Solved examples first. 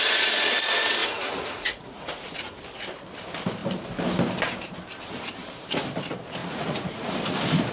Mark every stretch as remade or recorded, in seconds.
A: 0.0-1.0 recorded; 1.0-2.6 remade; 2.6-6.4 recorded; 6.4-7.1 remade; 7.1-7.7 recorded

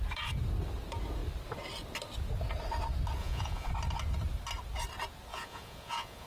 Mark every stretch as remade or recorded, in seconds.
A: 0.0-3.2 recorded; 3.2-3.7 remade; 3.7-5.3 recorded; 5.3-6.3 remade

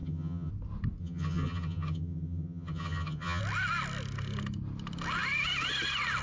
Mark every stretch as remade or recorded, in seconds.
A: 0.0-0.5 remade; 0.5-1.0 recorded; 1.0-3.4 remade; 3.4-6.2 recorded